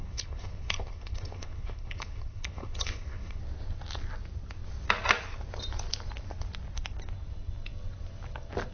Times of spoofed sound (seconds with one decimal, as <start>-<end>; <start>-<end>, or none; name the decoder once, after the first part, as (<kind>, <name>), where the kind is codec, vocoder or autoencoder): 0.0-3.4 (codec, HILCodec)

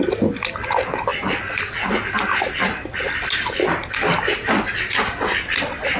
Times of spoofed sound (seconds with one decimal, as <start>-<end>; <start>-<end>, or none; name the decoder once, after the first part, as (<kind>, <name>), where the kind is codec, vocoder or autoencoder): none

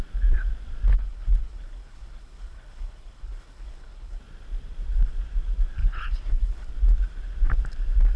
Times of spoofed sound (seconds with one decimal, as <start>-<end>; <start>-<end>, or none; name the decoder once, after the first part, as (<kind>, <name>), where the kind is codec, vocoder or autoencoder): 0.9-4.2 (codec, HILCodec); 5.8-6.7

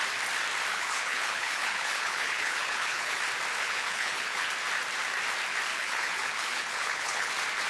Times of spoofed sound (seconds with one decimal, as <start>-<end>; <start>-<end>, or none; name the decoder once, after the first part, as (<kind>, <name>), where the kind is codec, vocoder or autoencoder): 0.7-3.2 (codec, HILCodec); 3.6-4.5; 5.7-7.3